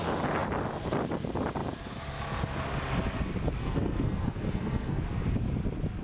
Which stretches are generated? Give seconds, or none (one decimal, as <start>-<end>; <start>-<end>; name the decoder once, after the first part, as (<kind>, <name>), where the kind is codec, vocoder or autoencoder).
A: 3.6-5.0 (codec, SNAC)